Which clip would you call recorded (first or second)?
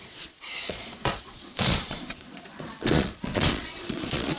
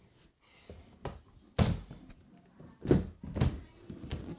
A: second